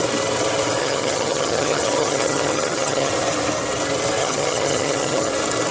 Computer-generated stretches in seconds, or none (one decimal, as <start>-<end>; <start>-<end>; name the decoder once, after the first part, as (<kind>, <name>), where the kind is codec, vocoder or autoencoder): 0.8-3.1 (vocoder, HiFi-GAN); 4.2-5.3